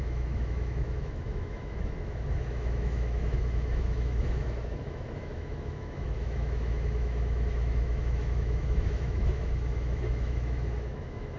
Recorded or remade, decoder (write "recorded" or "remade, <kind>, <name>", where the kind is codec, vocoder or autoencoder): remade, autoencoder, DAC-VAE